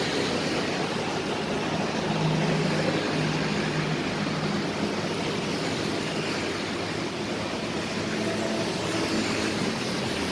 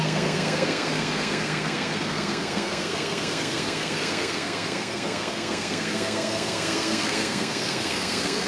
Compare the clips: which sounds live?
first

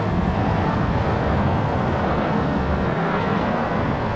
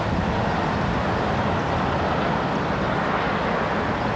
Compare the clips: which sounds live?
second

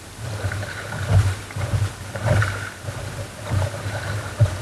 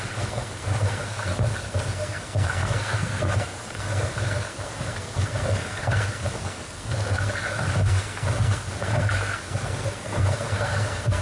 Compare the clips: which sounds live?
first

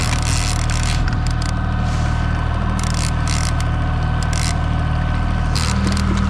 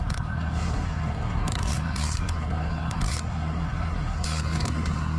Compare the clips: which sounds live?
first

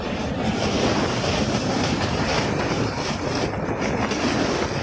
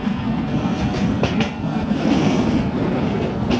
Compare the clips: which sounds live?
first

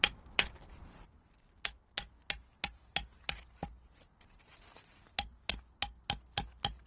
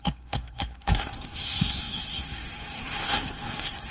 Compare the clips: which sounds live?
first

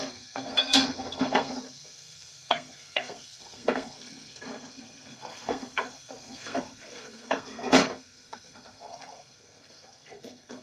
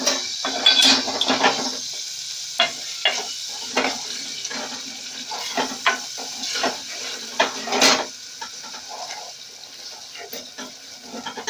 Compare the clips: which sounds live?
second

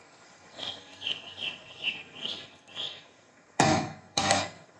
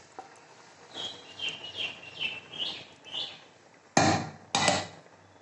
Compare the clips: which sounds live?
second